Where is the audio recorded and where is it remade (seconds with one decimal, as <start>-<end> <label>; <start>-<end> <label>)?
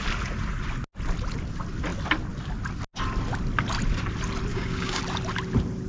0.0-4.5 recorded; 4.5-5.0 remade; 5.0-5.9 recorded